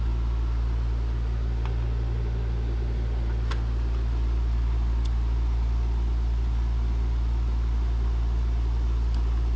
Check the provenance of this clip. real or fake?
real